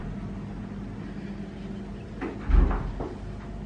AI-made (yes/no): no